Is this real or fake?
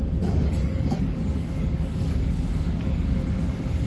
fake